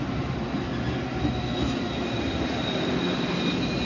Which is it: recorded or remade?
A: recorded